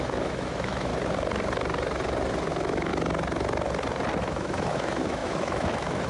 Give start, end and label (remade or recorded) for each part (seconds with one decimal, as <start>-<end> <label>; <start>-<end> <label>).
0.0-0.9 remade; 0.9-2.5 recorded; 2.5-2.9 remade; 2.9-4.2 recorded; 4.2-6.1 remade